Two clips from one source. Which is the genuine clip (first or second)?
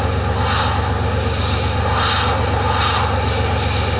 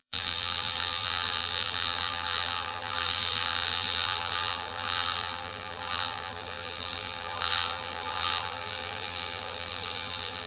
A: first